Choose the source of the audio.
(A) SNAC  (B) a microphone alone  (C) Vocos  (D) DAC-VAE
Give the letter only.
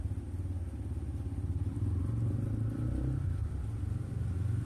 B